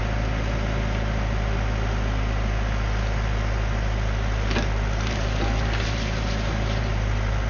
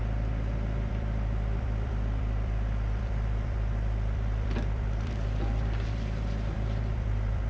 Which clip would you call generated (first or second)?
second